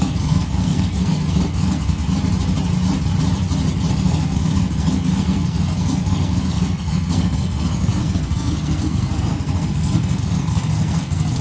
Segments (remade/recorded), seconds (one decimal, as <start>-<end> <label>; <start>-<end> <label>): 0.0-2.0 remade; 2.0-3.9 recorded; 3.9-11.4 remade